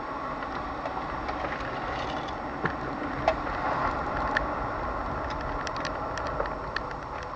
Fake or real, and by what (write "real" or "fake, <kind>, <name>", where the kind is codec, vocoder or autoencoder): real